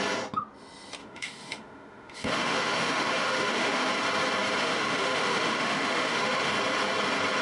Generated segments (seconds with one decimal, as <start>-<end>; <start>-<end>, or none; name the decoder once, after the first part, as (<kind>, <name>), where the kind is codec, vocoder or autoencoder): 1.0-3.9 (autoencoder, DAC-VAE); 4.6-6.5